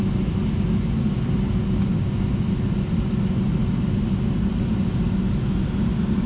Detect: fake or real real